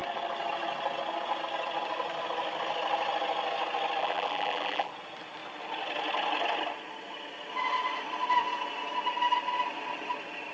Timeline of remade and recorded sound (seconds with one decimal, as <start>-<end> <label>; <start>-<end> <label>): 0.0-4.0 recorded; 4.0-4.9 remade; 4.9-10.5 recorded